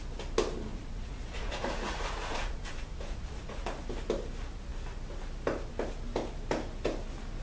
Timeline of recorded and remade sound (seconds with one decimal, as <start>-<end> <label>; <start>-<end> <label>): 0.0-0.7 recorded; 0.7-3.6 remade; 3.6-7.4 recorded